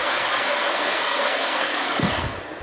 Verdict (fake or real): fake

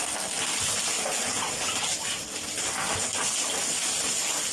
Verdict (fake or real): real